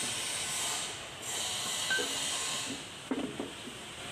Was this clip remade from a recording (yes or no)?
no